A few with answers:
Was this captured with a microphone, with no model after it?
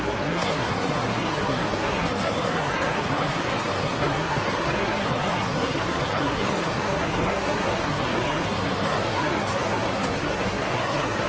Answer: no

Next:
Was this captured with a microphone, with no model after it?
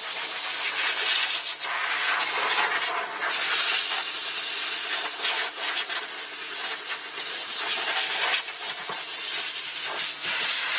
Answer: yes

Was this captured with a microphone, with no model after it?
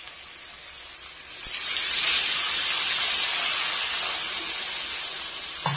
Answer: yes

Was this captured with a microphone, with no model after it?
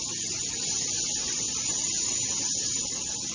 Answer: yes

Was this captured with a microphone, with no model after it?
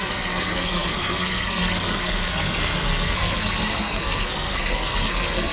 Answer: no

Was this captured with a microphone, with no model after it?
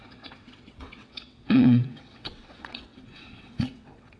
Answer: no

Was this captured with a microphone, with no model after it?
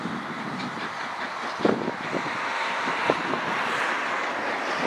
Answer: yes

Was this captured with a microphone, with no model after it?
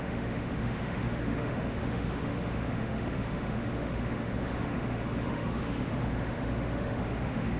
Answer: no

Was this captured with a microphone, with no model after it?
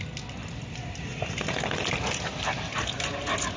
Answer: yes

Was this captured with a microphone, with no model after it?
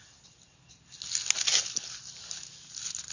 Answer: yes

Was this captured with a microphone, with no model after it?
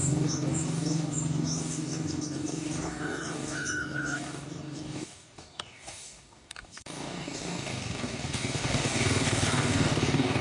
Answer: no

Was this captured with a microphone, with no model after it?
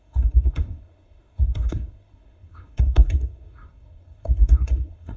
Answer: no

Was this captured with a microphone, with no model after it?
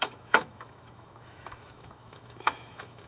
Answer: no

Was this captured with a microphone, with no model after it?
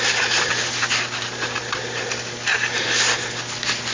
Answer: yes